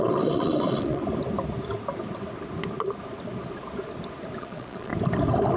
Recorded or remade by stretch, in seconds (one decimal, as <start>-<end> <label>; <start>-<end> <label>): 0.0-1.0 remade; 1.0-4.4 recorded; 4.4-4.9 remade; 4.9-5.6 recorded